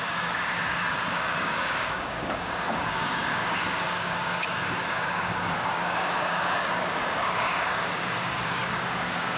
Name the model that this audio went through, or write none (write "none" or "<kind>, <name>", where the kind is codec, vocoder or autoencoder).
codec, DAC